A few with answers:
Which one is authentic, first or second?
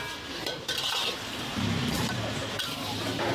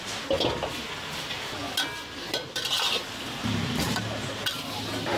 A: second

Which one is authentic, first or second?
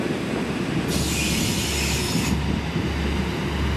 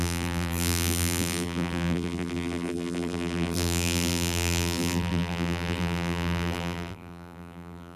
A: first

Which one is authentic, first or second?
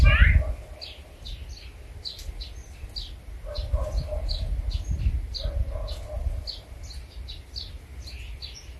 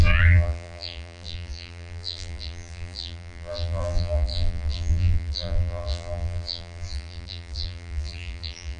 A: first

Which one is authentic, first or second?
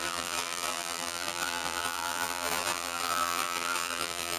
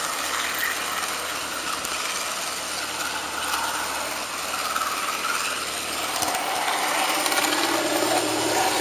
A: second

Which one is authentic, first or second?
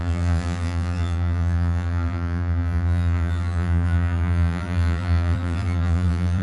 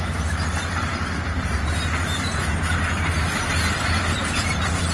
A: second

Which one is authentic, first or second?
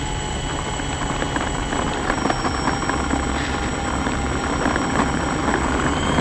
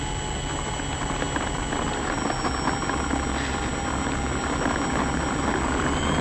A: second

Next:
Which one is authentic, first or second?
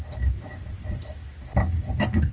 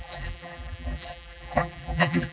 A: first